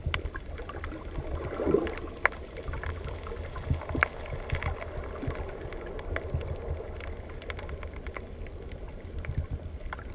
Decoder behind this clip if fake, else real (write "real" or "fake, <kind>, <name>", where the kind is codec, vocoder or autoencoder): real